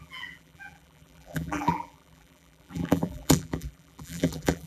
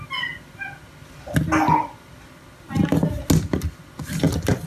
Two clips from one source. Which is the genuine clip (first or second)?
second